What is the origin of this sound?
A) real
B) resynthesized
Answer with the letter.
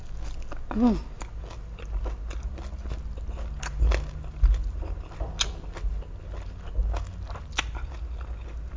A